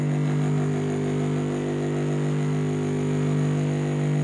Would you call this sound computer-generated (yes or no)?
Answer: no